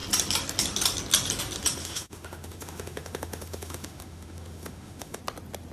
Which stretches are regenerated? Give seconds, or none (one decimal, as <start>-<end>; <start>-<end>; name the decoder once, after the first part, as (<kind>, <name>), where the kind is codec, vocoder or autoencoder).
1.8-5.2 (autoencoder, DAC-VAE)